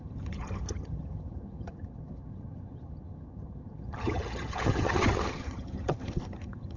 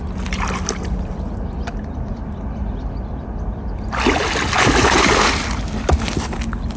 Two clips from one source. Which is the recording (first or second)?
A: second